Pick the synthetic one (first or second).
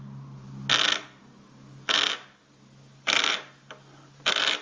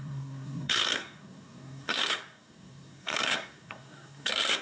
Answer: second